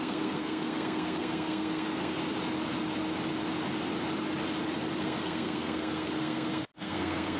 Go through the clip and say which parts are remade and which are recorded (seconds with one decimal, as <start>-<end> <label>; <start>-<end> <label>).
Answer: 0.0-2.2 remade; 2.2-5.0 recorded; 5.0-7.4 remade